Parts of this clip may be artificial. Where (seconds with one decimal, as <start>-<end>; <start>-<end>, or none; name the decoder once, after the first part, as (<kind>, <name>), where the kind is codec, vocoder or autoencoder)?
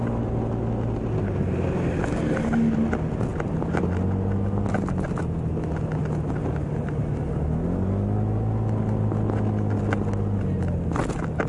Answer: none